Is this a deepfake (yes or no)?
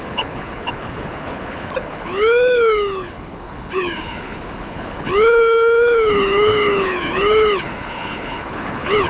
yes